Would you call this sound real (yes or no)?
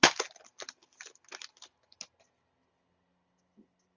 yes